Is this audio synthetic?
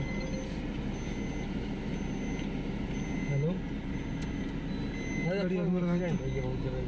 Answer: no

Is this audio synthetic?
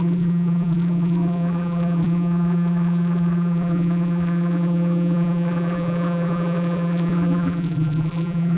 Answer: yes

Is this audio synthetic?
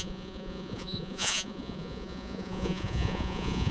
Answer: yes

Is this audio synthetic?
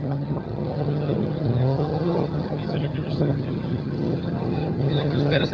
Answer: yes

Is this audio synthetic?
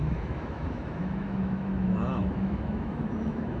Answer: yes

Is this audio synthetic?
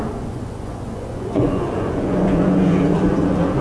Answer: yes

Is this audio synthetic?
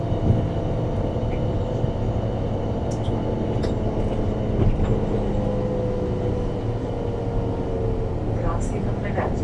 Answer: no